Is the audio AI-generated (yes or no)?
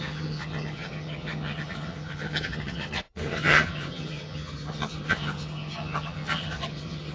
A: yes